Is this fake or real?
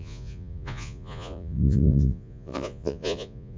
fake